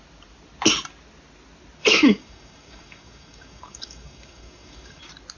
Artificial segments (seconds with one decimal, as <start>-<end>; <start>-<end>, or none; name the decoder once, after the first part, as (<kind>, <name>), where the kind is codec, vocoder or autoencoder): 1.8-5.0 (codec, DAC)